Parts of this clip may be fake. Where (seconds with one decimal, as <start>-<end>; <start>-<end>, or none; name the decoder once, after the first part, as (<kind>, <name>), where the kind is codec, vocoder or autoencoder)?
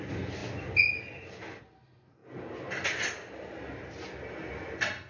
none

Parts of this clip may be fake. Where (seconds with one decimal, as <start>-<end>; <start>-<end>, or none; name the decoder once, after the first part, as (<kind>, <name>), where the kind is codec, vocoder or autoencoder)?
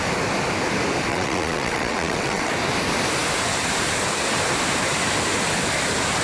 1.1-2.5 (vocoder, WaveNeXt)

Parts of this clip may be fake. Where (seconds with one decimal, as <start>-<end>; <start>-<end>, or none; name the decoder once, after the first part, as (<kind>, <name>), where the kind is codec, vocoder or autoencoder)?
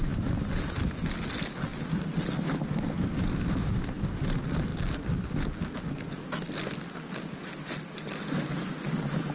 none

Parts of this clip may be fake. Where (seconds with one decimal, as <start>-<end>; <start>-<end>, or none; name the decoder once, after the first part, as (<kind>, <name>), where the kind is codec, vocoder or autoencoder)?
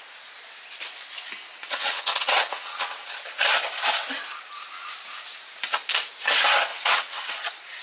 1.5-3.2 (vocoder, WaveNeXt); 6.7-7.3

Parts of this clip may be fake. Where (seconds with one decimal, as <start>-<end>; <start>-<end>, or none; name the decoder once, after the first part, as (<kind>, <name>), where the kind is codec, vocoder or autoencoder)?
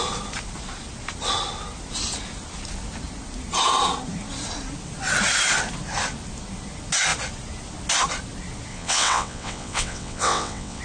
8.7-10.8 (vocoder, WaveNeXt)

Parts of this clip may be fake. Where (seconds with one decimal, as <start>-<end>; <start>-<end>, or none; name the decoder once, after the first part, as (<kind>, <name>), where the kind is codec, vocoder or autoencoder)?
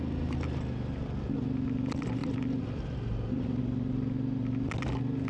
none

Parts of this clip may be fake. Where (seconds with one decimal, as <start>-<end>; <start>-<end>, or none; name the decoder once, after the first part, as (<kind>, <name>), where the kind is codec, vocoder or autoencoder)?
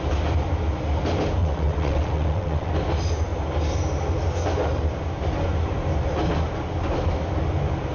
1.4-2.7 (vocoder, WaveNeXt)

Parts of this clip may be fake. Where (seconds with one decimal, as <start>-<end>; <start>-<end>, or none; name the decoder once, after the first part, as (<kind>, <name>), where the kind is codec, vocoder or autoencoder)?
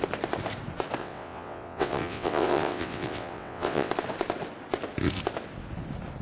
1.0-3.9 (vocoder, WaveNeXt)